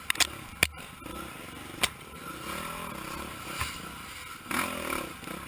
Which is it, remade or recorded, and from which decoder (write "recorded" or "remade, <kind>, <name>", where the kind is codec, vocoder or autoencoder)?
recorded